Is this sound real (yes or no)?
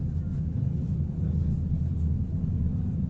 yes